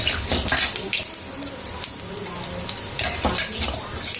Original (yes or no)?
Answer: yes